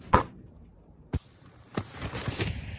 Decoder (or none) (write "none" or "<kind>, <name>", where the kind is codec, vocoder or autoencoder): vocoder, BigVGAN v2